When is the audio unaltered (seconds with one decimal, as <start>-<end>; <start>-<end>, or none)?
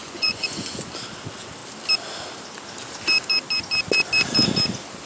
0.9-5.1